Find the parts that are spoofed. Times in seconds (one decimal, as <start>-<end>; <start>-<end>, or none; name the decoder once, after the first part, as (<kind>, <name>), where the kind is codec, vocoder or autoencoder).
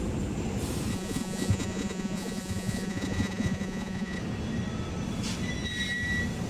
0.9-4.2 (vocoder, Vocos)